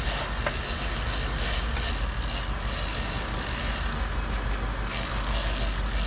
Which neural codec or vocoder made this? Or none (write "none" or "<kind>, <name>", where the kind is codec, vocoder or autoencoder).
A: none